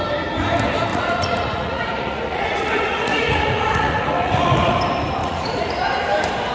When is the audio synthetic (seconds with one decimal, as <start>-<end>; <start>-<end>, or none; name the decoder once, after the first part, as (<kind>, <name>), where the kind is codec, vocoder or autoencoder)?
0.9-4.8 (vocoder, Vocos); 5.2-5.8